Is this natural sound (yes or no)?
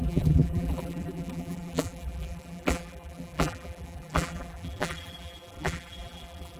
no